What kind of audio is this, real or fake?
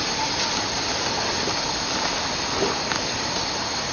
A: fake